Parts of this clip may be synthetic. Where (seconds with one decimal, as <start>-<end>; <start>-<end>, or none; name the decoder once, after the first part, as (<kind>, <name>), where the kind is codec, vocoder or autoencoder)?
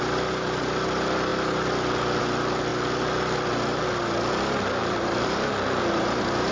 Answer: 4.8-6.5 (vocoder, BigVGAN v2)